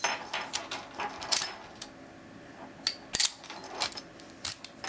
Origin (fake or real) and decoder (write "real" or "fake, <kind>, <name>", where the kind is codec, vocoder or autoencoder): real